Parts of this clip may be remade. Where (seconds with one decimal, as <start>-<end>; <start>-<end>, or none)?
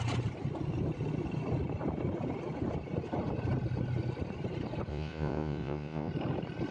4.9-6.1